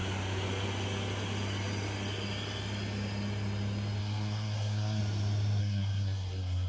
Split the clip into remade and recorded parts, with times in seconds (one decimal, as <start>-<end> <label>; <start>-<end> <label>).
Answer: 0.0-4.0 recorded; 4.0-5.0 remade; 5.0-5.6 recorded; 5.6-6.7 remade

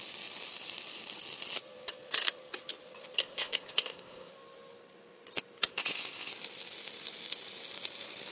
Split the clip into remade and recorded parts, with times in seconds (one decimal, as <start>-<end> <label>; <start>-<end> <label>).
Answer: 0.0-3.2 recorded; 3.2-4.3 remade; 4.3-5.7 recorded; 5.7-6.3 remade; 6.3-8.3 recorded

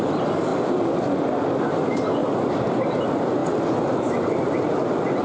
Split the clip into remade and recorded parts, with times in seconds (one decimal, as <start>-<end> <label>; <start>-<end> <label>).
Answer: 0.0-5.2 remade

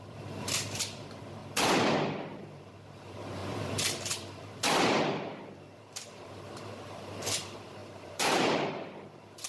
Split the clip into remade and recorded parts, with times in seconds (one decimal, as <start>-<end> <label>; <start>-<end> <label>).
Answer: 0.0-1.4 remade; 1.4-2.3 recorded; 2.3-9.5 remade

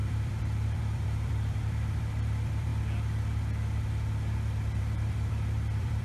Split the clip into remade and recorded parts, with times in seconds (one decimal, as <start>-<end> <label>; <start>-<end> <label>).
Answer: 0.0-2.7 remade; 2.7-4.8 recorded; 4.8-6.0 remade